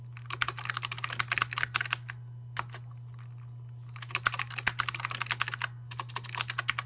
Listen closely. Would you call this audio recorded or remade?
recorded